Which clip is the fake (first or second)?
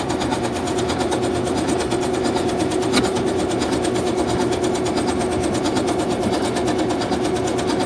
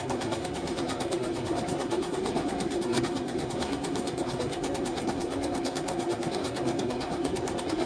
second